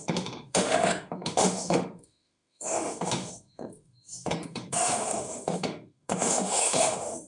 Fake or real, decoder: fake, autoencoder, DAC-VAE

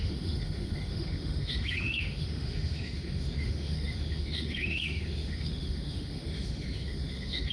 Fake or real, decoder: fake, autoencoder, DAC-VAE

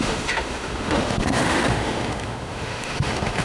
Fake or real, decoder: fake, autoencoder, DAC-VAE